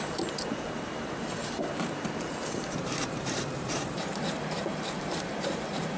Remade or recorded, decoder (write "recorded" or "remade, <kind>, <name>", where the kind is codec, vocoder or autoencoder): remade, vocoder, BigVGAN v2